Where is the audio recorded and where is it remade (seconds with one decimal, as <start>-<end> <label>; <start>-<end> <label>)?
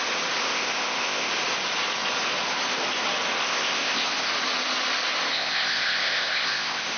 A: 0.0-0.4 recorded; 0.4-1.3 remade; 1.3-3.4 recorded; 3.4-4.3 remade; 4.3-5.3 recorded; 5.3-7.0 remade